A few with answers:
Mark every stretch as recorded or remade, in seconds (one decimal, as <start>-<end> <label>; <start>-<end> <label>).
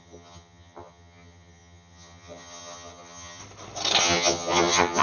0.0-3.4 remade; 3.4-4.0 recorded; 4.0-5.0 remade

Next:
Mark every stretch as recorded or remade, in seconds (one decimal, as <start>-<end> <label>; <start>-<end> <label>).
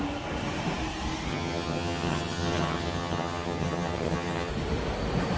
0.0-1.3 recorded; 1.3-4.5 remade; 4.5-5.4 recorded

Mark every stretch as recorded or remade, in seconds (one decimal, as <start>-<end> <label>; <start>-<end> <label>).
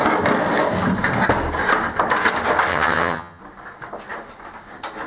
0.0-2.7 recorded; 2.7-3.4 remade; 3.4-5.1 recorded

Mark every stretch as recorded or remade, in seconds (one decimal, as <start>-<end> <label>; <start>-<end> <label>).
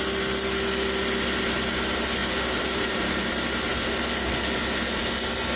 0.0-2.2 recorded; 2.2-3.2 remade; 3.2-5.6 recorded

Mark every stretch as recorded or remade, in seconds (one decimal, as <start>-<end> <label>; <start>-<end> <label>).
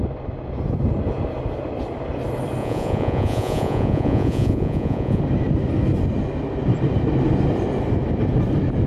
0.0-2.6 recorded; 2.6-5.2 remade; 5.2-8.9 recorded